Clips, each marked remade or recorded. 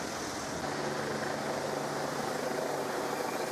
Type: recorded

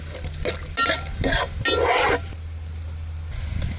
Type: recorded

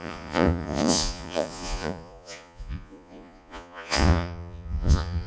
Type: remade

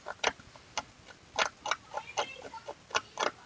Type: recorded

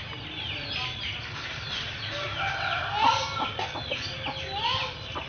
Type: recorded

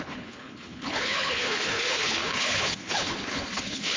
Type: remade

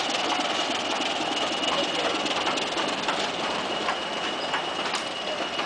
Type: recorded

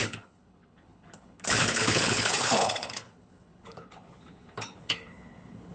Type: remade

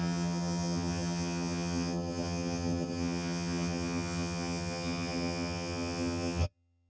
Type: remade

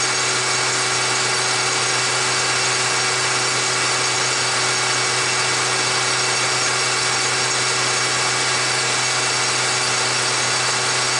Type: recorded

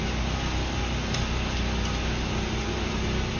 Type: recorded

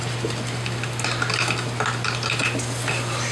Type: recorded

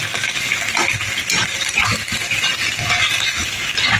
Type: recorded